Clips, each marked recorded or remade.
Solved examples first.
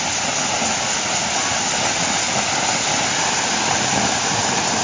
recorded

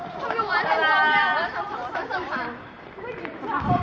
recorded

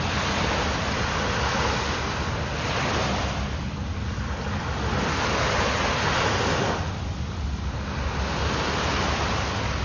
recorded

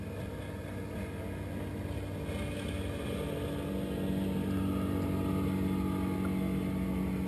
recorded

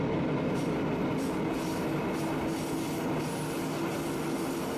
recorded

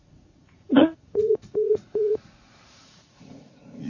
remade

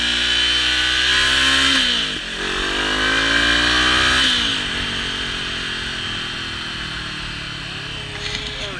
recorded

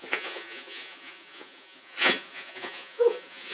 remade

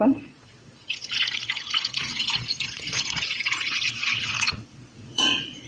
remade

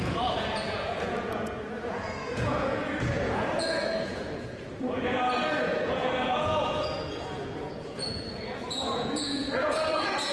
remade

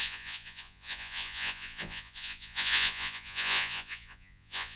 remade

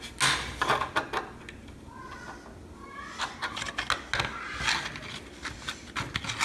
recorded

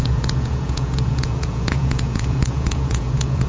remade